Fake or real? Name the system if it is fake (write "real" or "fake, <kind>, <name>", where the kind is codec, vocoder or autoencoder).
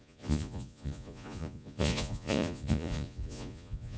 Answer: fake, vocoder, Vocos